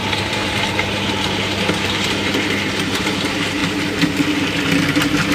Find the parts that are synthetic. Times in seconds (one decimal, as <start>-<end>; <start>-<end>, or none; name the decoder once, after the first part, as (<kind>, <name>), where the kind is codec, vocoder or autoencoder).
0.0-3.6 (vocoder, BigVGAN v2)